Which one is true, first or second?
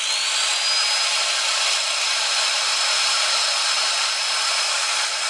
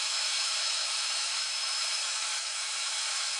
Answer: first